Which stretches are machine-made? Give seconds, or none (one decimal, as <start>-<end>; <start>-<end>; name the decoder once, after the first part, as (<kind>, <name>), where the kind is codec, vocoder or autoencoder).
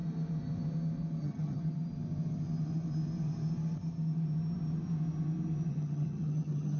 1.2-1.6 (vocoder, HiFi-GAN); 5.7-6.8